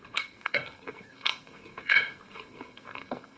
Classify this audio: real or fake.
fake